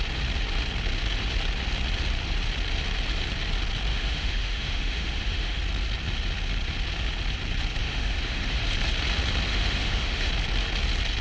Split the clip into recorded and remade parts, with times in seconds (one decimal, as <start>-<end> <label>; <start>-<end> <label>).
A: 0.0-3.9 recorded; 3.9-5.6 remade; 5.6-7.8 recorded; 7.8-8.6 remade; 8.6-9.5 recorded; 9.5-10.3 remade; 10.3-11.2 recorded